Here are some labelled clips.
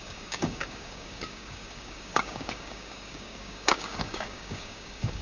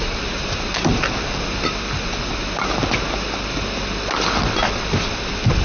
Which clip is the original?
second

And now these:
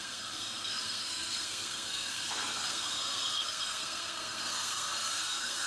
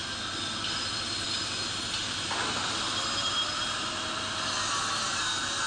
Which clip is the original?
second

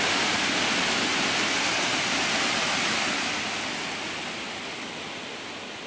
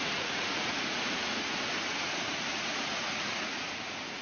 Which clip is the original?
first